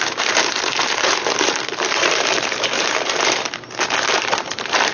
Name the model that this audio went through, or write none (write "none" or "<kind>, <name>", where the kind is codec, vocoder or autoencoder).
vocoder, BigVGAN v2